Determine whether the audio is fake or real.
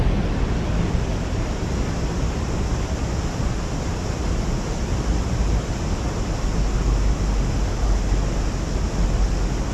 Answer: real